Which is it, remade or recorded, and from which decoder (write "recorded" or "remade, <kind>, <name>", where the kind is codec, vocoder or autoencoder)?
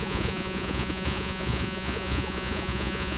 remade, vocoder, Vocos